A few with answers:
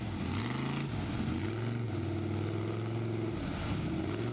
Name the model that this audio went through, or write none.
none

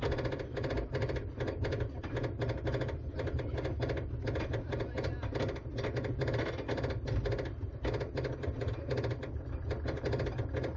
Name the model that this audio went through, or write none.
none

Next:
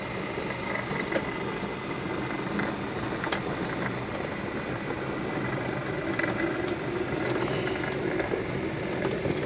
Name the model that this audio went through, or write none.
none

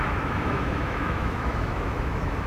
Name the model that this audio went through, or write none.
autoencoder, DAC-VAE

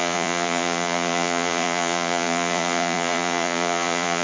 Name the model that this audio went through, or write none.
vocoder, Vocos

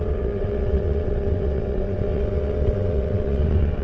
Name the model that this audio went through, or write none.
vocoder, WaveNeXt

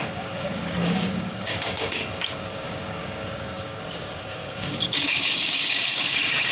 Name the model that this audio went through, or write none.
codec, DAC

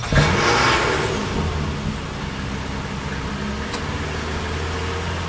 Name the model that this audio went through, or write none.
none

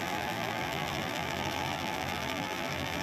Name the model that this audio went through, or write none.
vocoder, BigVGAN v2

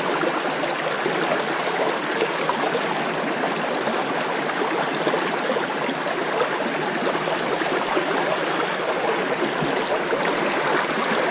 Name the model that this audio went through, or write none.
none